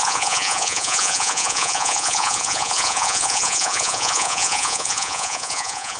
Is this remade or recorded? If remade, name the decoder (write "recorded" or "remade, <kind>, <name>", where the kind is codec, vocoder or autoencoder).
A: remade, vocoder, Vocos